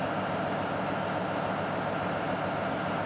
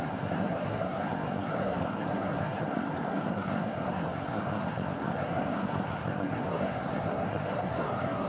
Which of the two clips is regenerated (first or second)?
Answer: second